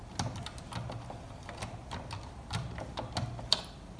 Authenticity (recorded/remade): recorded